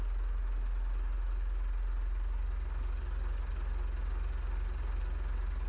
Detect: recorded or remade recorded